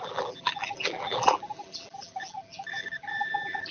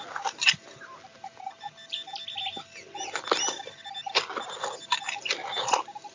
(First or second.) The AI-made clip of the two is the first